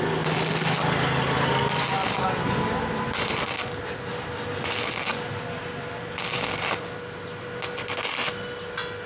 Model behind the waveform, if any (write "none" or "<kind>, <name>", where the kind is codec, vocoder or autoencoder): none